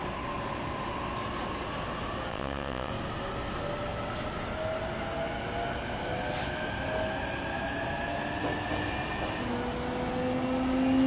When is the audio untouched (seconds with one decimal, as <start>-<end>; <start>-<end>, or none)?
0.0-2.3; 2.9-11.1